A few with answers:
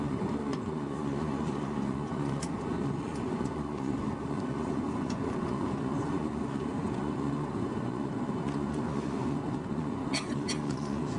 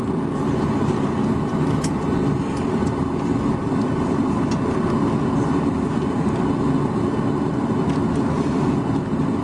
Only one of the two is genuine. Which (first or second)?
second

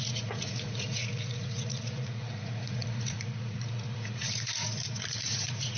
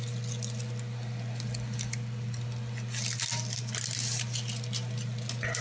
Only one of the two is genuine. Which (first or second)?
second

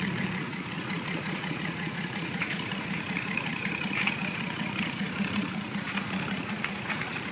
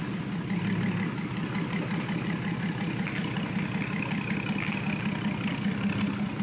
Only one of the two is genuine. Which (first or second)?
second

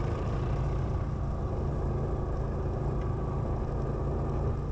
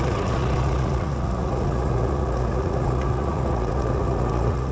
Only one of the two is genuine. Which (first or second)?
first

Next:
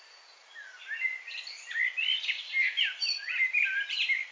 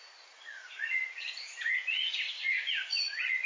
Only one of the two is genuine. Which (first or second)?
first